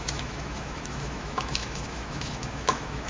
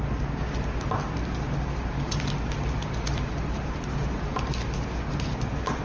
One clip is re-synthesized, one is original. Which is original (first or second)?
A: second